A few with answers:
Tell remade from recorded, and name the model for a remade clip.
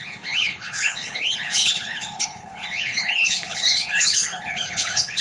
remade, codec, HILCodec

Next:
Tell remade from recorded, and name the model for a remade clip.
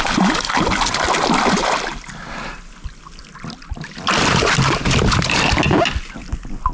recorded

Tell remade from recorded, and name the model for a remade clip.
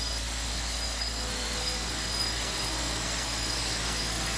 remade, codec, SNAC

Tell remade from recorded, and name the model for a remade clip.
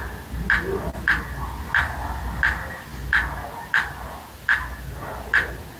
recorded